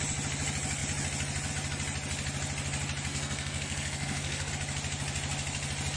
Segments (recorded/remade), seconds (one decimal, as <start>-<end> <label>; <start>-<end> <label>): 0.0-3.1 recorded; 3.1-4.5 remade; 4.5-6.0 recorded